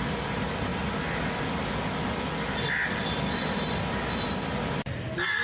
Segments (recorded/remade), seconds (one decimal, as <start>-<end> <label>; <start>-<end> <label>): 0.0-5.4 recorded